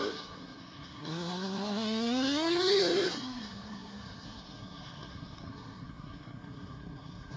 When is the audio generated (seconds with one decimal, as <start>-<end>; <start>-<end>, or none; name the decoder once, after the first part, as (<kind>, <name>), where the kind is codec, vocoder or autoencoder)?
0.0-7.4 (codec, SNAC)